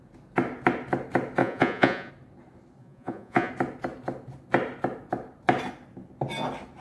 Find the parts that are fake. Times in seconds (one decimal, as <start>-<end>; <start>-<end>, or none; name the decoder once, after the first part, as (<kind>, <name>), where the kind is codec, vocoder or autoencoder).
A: 1.4-2.1 (vocoder, Vocos); 2.8-3.5